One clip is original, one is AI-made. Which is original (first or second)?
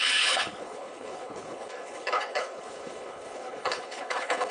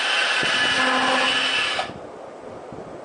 second